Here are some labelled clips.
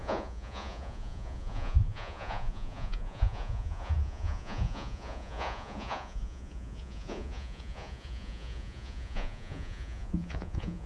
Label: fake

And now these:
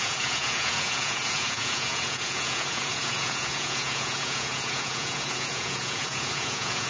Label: fake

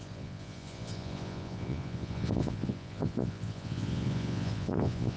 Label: fake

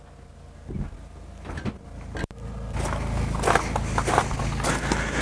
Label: real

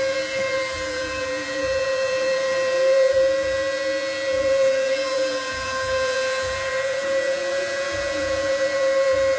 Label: fake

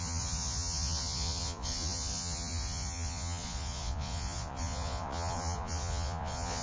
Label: fake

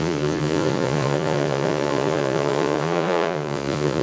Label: fake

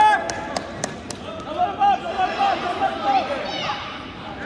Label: real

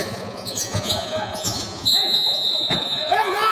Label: fake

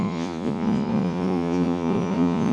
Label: fake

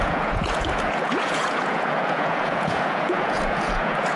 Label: fake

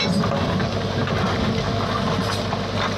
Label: real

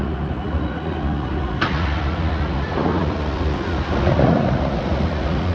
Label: fake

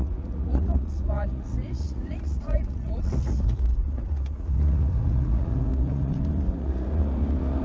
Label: fake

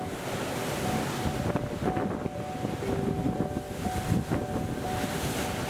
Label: real